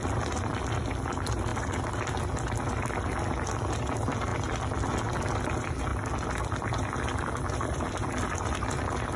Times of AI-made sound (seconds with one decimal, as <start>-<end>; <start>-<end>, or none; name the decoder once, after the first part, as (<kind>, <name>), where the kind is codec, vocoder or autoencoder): 0.0-0.6 (vocoder, BigVGAN v2); 5.9-8.1